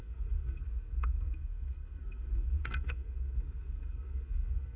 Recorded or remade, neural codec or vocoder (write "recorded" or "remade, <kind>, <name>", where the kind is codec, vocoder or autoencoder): remade, codec, SNAC